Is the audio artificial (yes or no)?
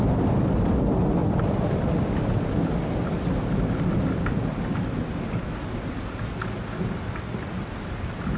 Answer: no